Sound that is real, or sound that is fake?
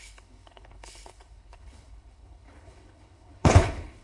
fake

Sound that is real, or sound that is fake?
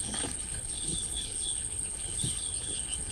fake